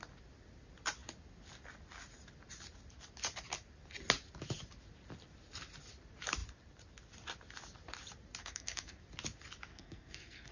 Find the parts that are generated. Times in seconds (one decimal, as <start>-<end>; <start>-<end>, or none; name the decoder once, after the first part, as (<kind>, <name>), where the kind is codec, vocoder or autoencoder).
8.4-9.0 (codec, SNAC); 9.7-10.5